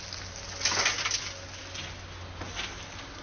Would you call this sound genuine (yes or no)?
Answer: yes